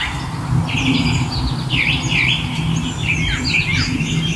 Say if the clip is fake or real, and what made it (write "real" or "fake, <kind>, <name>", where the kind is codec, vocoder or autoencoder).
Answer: real